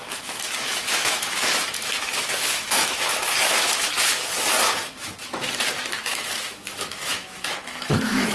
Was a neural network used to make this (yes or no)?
yes